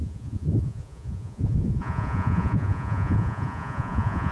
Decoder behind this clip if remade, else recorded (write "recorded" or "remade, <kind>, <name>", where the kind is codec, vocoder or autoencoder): remade, vocoder, Vocos